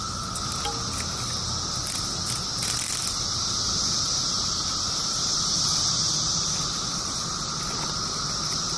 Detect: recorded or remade recorded